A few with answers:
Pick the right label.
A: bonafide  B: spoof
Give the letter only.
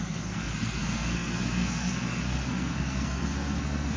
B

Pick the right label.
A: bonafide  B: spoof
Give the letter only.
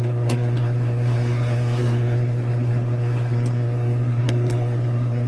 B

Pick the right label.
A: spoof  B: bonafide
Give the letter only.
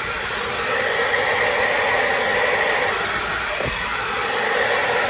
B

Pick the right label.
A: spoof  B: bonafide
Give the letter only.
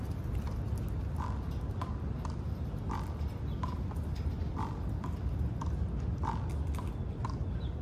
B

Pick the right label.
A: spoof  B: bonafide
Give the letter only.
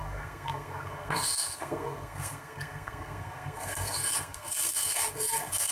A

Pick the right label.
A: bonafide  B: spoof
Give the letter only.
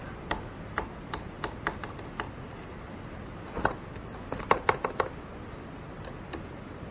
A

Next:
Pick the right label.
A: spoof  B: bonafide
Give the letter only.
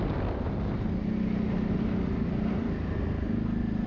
B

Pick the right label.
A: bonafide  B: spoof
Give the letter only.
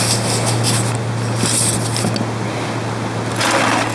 A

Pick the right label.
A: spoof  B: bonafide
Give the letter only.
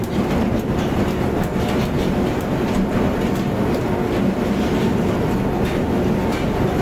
B